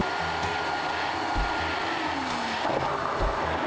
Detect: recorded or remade recorded